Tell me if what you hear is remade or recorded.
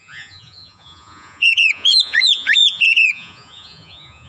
remade